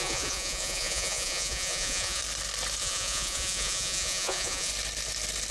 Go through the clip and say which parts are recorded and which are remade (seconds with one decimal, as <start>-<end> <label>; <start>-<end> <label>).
0.0-2.2 remade; 2.2-2.8 recorded; 2.8-4.7 remade; 4.7-5.5 recorded